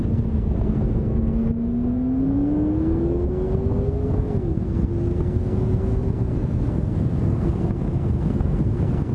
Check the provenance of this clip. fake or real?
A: fake